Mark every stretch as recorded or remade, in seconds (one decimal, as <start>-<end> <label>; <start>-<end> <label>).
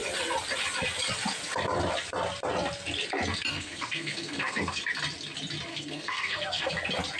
0.0-3.5 recorded; 3.5-4.8 remade; 4.8-5.7 recorded; 5.7-6.7 remade; 6.7-7.2 recorded